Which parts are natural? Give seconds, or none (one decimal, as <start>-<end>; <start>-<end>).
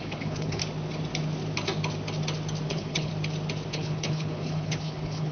0.6-2.7; 3.1-3.7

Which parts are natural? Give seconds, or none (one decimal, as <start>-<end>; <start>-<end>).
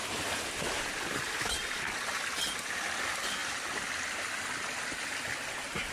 0.0-5.9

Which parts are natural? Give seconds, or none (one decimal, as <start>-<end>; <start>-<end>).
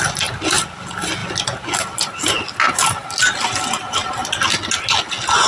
0.0-5.5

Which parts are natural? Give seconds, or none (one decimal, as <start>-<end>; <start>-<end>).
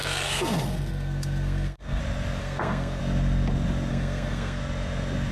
2.0-2.4; 3.0-3.9; 4.6-5.3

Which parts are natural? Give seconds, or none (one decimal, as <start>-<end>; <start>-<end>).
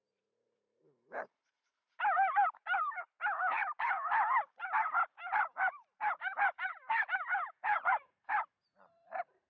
none